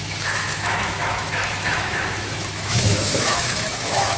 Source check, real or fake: fake